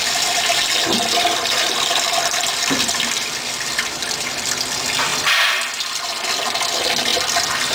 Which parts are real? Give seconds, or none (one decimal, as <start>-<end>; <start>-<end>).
5.1-5.7; 7.1-7.7